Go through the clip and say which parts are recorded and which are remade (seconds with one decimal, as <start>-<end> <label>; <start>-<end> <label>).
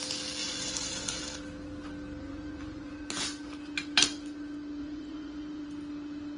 0.0-0.4 recorded; 0.4-1.2 remade; 1.2-2.2 recorded; 2.2-3.0 remade; 3.0-4.8 recorded; 4.8-5.6 remade; 5.6-6.4 recorded